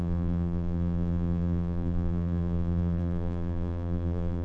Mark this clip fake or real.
fake